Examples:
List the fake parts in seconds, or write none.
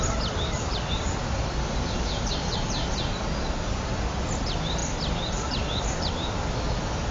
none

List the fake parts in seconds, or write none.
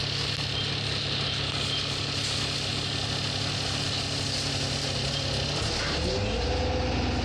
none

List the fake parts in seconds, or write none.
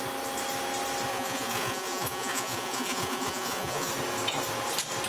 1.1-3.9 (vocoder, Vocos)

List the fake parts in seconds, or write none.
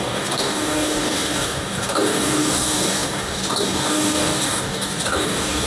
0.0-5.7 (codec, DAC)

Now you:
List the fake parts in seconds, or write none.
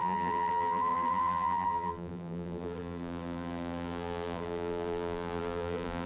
0.0-6.1 (vocoder, BigVGAN v2)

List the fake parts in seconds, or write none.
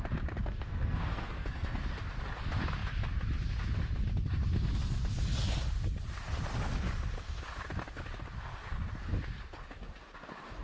0.4-1.8 (codec, SNAC)